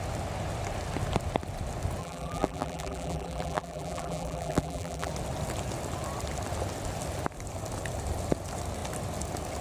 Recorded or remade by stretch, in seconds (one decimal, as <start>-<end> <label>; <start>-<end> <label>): 0.0-2.0 recorded; 2.0-5.1 remade; 5.1-9.6 recorded